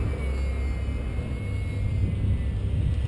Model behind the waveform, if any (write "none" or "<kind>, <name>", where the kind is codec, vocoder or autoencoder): none